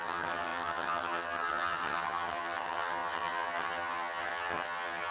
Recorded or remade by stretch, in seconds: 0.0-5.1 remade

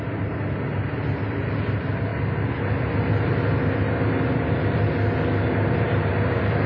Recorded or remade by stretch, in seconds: 0.0-6.7 recorded

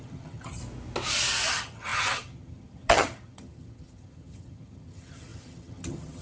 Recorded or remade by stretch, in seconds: 0.0-0.6 remade; 0.6-1.5 recorded; 1.5-6.2 remade

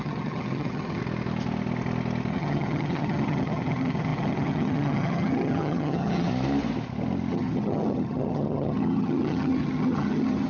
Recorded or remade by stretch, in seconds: 0.0-1.0 remade; 1.0-2.3 recorded; 2.3-6.3 remade; 6.3-7.3 recorded; 7.3-10.5 remade

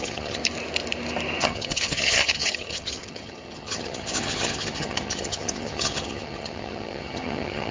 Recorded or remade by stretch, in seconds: 0.0-0.4 remade; 0.4-1.4 recorded; 1.4-7.7 remade